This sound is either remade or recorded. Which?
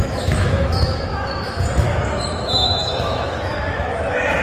remade